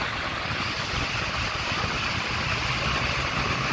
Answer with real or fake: real